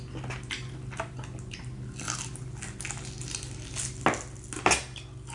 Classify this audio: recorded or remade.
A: recorded